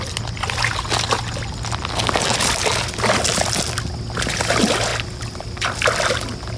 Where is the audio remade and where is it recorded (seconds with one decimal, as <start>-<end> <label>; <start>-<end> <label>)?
0.0-6.6 recorded